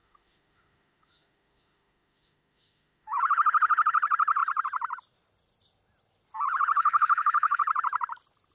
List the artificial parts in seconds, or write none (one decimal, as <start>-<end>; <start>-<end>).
0.0-3.2; 6.8-7.6